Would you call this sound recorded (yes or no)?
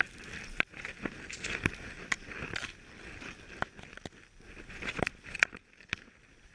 yes